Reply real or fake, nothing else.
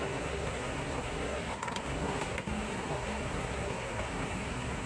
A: fake